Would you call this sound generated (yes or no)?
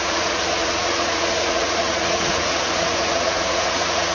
yes